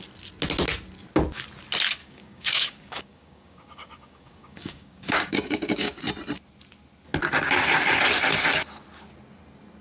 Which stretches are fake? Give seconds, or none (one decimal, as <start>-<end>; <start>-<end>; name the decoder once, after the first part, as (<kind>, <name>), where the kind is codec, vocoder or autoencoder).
2.0-6.0 (codec, DAC)